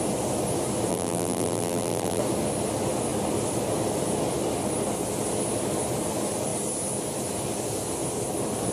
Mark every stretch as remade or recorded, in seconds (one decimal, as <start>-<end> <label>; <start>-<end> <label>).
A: 0.0-0.9 recorded; 0.9-2.2 remade; 2.2-8.7 recorded